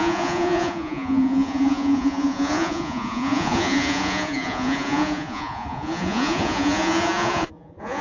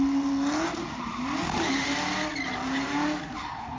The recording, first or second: second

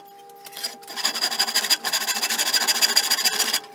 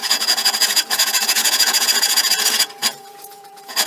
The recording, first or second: first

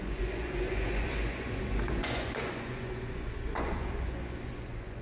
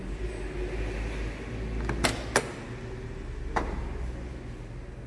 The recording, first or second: second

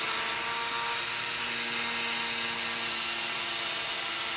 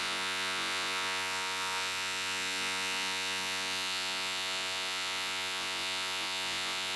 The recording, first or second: first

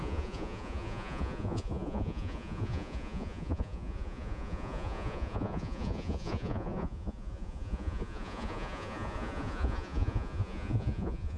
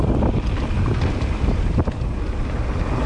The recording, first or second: second